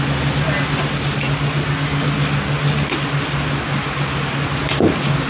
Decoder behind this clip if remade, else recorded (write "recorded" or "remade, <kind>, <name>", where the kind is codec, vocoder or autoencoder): recorded